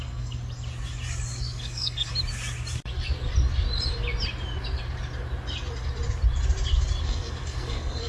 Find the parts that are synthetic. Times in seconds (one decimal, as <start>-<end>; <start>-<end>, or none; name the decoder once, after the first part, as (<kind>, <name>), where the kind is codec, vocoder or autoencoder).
0.0-0.4 (codec, SNAC); 1.4-2.1; 7.0-8.1